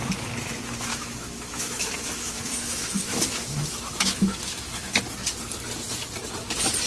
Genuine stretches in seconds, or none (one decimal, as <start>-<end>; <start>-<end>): 0.0-0.9; 5.0-6.9